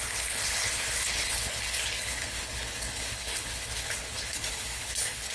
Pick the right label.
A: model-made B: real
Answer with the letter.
A